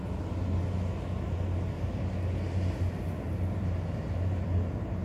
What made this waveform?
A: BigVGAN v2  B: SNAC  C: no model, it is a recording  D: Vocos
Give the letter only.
C